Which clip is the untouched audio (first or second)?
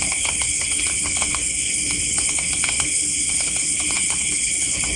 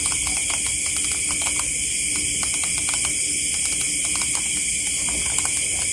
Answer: second